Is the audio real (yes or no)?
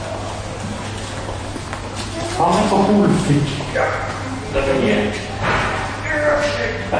yes